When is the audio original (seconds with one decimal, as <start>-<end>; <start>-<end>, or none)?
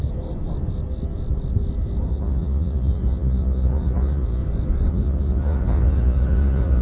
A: 0.0-2.1; 4.4-4.9